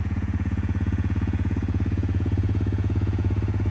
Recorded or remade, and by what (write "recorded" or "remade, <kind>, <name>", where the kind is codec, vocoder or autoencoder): remade, vocoder, Vocos